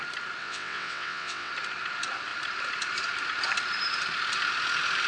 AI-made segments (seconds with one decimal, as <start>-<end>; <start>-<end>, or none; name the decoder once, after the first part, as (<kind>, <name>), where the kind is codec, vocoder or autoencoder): 0.4-1.5 (vocoder, WaveNeXt)